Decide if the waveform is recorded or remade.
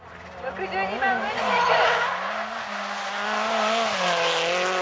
recorded